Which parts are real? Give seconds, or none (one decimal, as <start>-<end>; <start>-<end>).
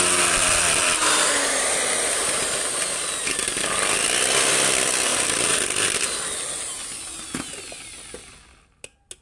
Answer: 0.0-9.2